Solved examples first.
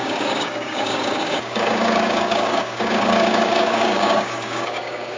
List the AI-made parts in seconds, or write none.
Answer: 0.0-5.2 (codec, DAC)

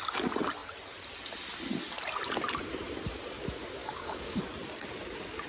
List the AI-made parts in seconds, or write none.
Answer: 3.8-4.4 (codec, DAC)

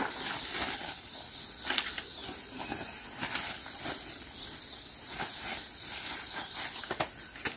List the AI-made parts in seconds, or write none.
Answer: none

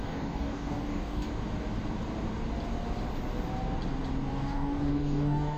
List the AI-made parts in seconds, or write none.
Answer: 0.0-1.3 (codec, DAC); 4.3-5.6

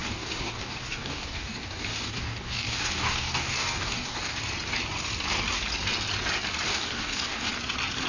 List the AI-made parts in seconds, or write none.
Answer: 0.0-4.4 (codec, DAC); 6.7-7.5

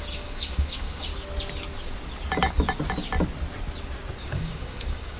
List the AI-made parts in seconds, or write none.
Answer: 0.0-1.1 (codec, DAC); 4.2-5.2